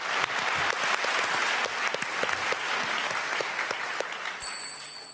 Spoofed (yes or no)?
no